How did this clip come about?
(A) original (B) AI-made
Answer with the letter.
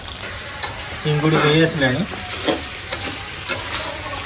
A